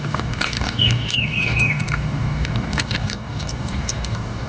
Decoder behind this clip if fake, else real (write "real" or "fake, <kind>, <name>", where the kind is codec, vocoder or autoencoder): fake, codec, DAC